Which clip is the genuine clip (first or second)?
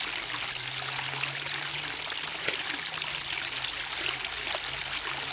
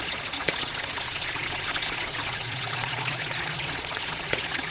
first